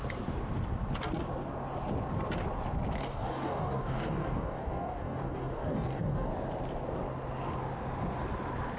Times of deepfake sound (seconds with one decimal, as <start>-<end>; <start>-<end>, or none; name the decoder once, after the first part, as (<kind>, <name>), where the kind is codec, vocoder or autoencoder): 3.0-6.3 (codec, DAC)